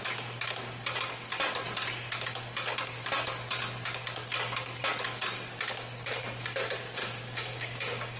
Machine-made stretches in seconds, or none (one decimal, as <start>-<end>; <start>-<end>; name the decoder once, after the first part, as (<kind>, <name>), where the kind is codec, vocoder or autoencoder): 7.0-8.2 (codec, DAC)